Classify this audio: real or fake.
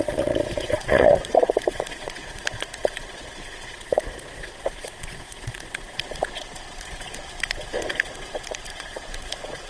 fake